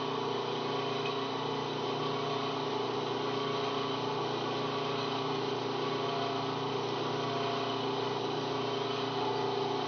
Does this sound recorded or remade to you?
recorded